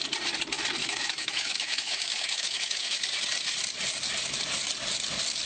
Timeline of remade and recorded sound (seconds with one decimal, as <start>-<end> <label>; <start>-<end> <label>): 0.0-0.8 recorded; 0.8-3.0 remade; 3.0-5.5 recorded